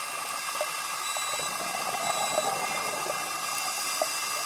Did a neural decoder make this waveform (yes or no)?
yes